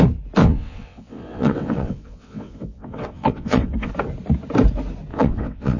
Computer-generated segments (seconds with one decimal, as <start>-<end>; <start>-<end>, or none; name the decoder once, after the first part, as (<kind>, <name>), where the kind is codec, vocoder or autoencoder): 0.4-3.9 (vocoder, WaveNeXt); 5.1-5.8